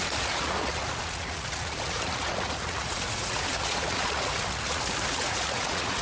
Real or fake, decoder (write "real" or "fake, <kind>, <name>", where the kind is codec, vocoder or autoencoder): fake, vocoder, Vocos